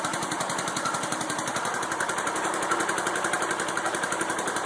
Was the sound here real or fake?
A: fake